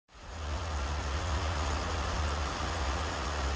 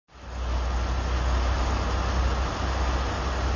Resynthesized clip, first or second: first